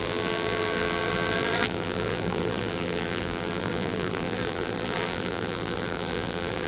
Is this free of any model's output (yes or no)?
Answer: no